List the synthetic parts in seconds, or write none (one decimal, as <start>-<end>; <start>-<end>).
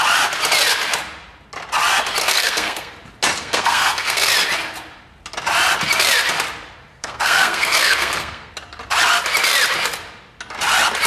2.2-2.9; 3.4-4.3; 6.9-8.5